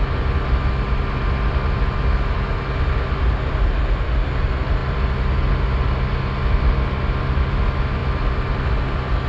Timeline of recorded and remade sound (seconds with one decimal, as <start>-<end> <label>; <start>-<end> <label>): 0.0-4.8 recorded; 4.8-5.5 remade; 5.5-9.3 recorded